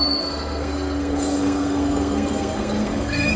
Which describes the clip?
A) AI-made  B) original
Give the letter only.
A